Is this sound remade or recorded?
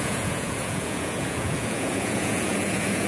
remade